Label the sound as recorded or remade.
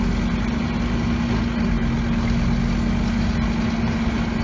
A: recorded